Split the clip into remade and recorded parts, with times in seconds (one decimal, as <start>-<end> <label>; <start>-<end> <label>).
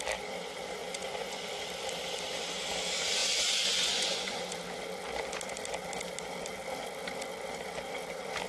0.0-0.8 recorded; 0.8-1.5 remade; 1.5-3.2 recorded; 3.2-4.4 remade; 4.4-8.5 recorded